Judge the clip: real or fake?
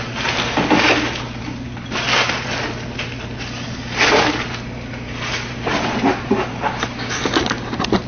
real